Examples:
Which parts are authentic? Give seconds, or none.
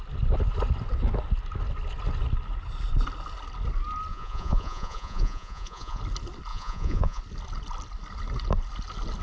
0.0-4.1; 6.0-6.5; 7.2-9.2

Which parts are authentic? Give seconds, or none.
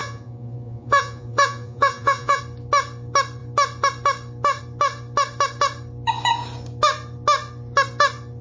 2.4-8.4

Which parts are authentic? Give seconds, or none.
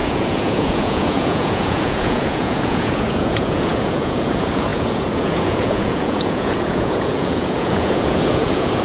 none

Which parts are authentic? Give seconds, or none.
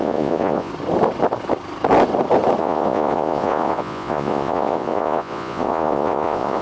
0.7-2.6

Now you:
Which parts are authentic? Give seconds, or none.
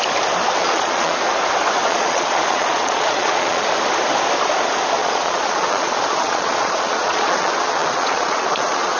0.0-0.6; 1.2-1.8; 3.7-5.0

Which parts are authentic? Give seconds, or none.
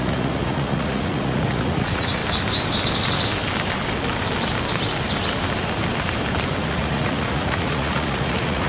2.2-6.7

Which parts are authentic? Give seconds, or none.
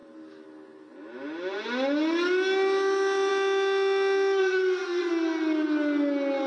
0.0-4.4; 5.1-6.5